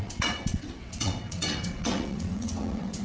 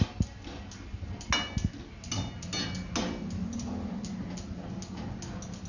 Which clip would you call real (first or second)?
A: second